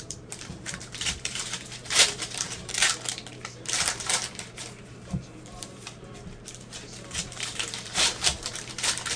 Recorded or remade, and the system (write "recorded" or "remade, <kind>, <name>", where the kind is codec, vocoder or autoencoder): remade, vocoder, BigVGAN v2